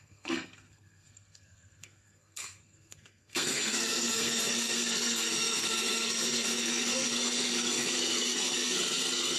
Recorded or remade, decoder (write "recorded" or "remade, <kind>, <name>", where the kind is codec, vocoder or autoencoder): remade, codec, SNAC